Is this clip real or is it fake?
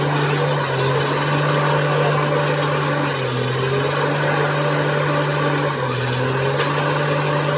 real